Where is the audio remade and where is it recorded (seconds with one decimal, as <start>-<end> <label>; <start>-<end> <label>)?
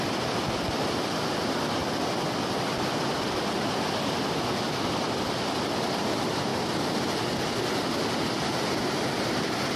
0.0-1.8 remade; 1.8-4.9 recorded; 4.9-6.5 remade; 6.5-7.6 recorded; 7.6-9.8 remade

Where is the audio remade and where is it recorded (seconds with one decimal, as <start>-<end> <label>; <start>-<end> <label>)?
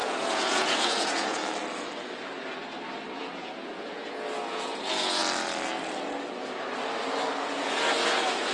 0.0-1.4 remade; 1.4-3.2 recorded; 3.2-5.2 remade; 5.2-7.4 recorded; 7.4-8.5 remade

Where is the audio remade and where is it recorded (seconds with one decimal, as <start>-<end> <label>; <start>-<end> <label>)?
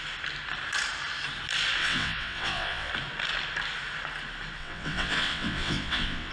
0.0-1.8 recorded; 1.8-2.9 remade; 2.9-4.6 recorded; 4.6-6.3 remade